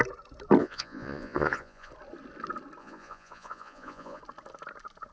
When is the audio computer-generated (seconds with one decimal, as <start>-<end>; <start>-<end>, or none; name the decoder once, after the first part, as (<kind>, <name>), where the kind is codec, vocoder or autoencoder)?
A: 0.6-1.9 (vocoder, Vocos); 2.8-4.2